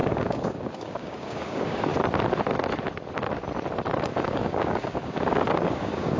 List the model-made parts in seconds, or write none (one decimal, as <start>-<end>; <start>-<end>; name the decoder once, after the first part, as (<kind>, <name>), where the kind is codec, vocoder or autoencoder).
0.0-1.9 (codec, DAC); 4.0-6.2